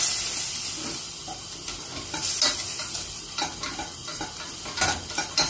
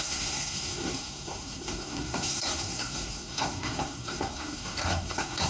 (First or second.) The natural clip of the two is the first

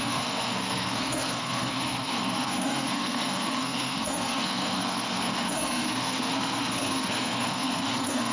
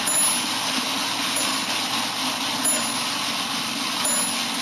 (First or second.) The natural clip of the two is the second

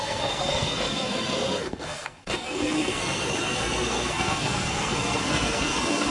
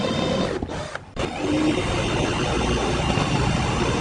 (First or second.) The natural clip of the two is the second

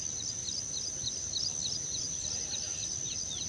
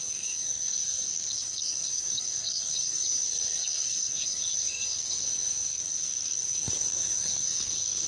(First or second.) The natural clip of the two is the first